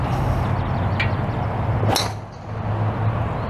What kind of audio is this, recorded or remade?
recorded